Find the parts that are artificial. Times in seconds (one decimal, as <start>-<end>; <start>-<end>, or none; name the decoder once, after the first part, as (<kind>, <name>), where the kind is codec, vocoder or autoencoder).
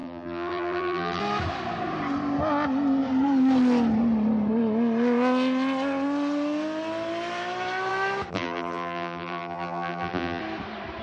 0.0-1.2 (vocoder, BigVGAN v2); 8.3-10.4